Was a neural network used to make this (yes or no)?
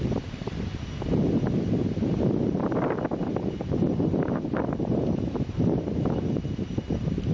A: no